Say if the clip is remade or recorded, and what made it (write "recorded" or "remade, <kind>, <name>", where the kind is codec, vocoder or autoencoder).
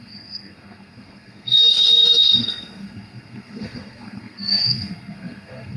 remade, codec, SNAC